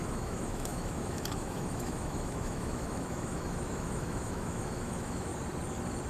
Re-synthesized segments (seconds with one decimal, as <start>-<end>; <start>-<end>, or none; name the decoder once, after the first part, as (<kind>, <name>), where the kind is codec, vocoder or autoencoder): 0.0-5.3 (autoencoder, DAC-VAE)